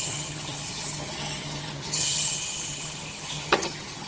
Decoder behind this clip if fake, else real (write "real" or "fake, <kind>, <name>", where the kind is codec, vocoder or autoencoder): fake, vocoder, HiFi-GAN